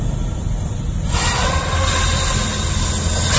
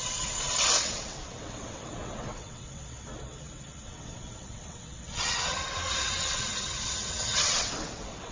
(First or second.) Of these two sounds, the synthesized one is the second